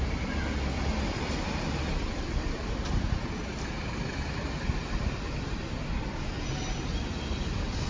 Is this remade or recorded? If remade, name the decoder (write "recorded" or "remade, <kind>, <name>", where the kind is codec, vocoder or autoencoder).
recorded